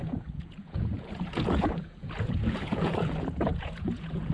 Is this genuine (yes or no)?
no